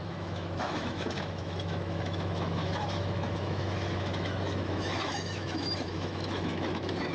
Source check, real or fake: fake